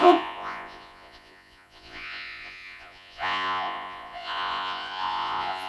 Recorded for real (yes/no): no